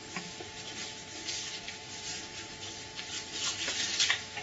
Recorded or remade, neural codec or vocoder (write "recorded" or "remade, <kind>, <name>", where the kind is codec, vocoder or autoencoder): recorded